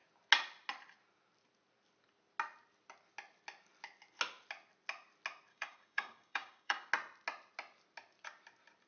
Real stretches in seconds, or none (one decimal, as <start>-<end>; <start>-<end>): 0.0-5.5; 6.9-8.9